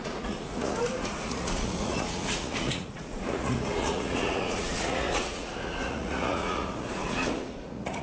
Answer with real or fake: fake